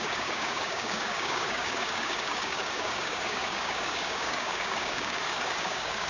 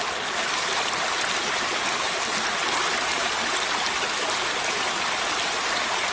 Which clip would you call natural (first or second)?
second